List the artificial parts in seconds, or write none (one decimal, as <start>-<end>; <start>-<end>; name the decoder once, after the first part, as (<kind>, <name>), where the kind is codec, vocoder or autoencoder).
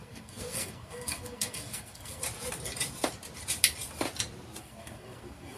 0.0-2.2 (codec, SNAC); 4.6-5.6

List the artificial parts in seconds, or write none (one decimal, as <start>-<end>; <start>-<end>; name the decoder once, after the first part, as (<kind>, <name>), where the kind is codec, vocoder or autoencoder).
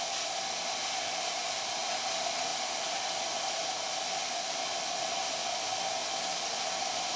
2.5-6.8 (vocoder, BigVGAN v2)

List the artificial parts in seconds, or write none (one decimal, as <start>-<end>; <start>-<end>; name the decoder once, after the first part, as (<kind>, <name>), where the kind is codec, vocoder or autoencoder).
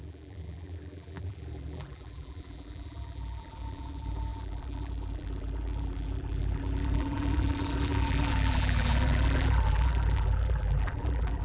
0.0-11.4 (vocoder, BigVGAN v2)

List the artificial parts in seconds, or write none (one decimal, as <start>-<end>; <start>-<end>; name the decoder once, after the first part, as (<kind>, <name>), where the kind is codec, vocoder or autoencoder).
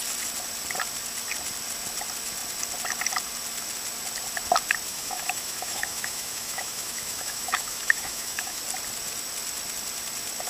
4.9-8.6 (autoencoder, DAC-VAE)